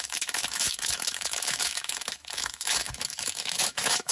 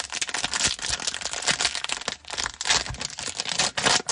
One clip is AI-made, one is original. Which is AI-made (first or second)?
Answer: first